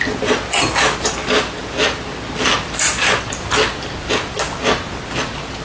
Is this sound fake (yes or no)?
no